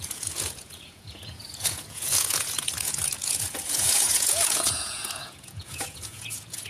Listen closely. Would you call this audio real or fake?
fake